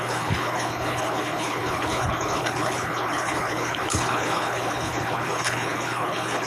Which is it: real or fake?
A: fake